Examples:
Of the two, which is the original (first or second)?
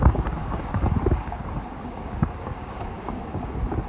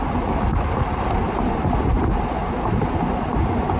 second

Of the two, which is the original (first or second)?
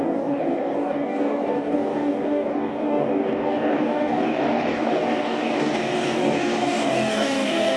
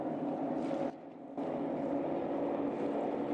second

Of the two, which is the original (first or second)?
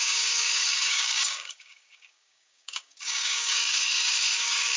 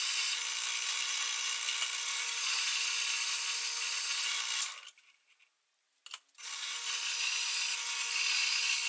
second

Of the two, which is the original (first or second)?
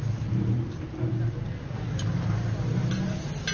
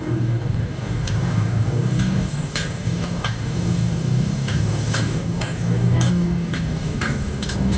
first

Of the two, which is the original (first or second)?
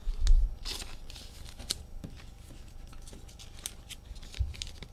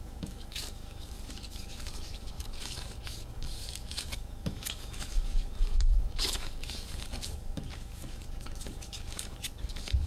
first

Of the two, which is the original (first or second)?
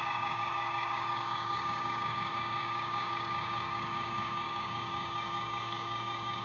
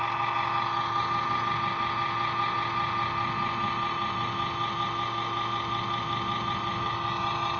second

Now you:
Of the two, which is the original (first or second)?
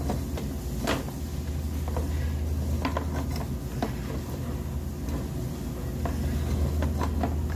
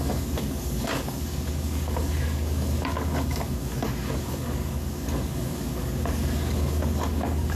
first